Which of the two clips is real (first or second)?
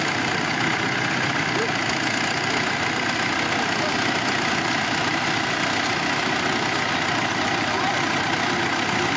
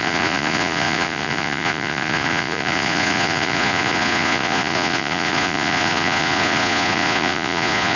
first